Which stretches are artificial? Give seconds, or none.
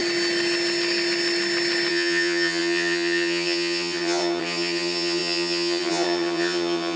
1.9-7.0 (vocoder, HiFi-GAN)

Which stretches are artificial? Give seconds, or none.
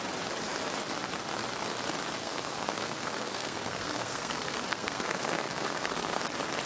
2.2-6.2 (codec, SNAC)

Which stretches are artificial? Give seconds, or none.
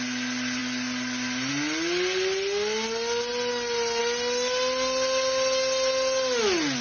none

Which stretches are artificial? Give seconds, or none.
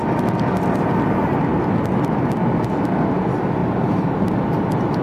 3.6-4.3 (vocoder, BigVGAN v2)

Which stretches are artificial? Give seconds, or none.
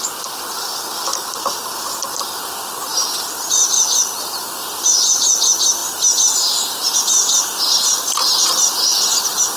1.1-2.4 (vocoder, BigVGAN v2); 2.9-4.6